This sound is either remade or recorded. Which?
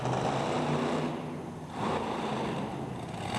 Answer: recorded